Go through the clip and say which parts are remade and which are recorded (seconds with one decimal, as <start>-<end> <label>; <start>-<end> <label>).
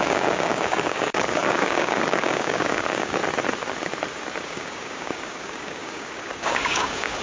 0.0-3.2 remade; 3.2-4.4 recorded; 4.4-7.2 remade